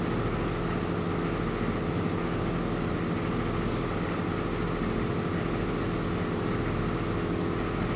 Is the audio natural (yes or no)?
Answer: yes